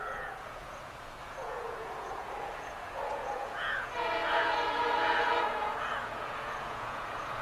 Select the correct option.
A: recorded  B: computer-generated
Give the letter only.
B